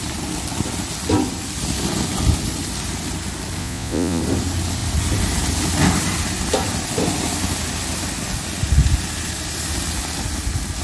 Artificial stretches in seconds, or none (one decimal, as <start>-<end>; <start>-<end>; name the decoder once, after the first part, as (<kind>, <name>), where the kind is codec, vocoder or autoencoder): 3.6-4.2 (vocoder, Vocos)